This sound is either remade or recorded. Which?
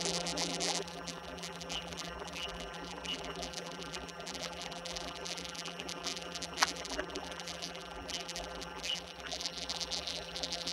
remade